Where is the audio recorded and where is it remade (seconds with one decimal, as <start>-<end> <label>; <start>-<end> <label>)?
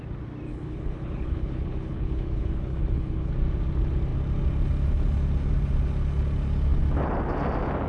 0.0-0.5 recorded; 0.5-3.3 remade; 3.3-7.9 recorded